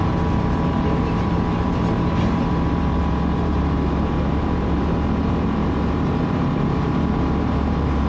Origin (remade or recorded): remade